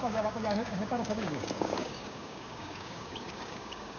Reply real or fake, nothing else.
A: fake